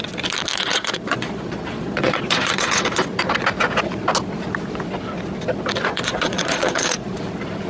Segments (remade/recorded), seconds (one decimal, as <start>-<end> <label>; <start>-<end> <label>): 0.0-0.6 recorded; 0.6-2.8 remade; 2.8-5.8 recorded; 5.8-7.1 remade; 7.1-7.7 recorded